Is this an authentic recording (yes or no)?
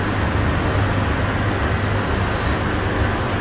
yes